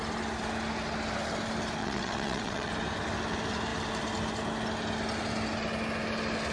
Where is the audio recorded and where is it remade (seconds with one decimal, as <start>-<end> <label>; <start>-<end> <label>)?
0.0-1.8 recorded; 1.8-2.7 remade; 2.7-6.5 recorded